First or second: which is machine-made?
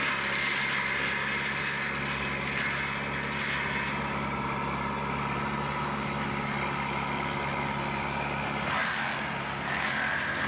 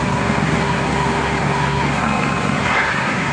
second